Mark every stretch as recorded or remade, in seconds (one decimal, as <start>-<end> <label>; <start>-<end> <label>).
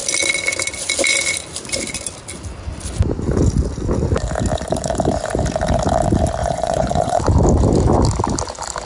0.0-6.4 recorded; 6.4-7.2 remade; 7.2-8.9 recorded